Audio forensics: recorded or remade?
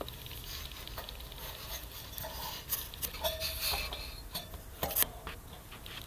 recorded